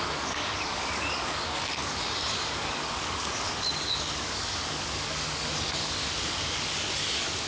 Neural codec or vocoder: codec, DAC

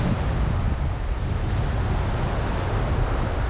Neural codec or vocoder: none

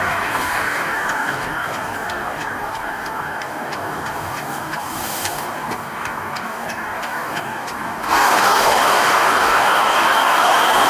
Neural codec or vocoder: codec, DAC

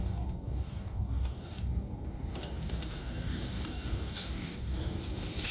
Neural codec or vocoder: codec, DAC